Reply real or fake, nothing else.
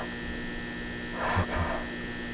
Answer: real